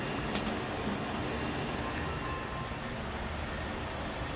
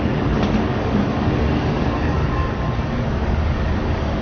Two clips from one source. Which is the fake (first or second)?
second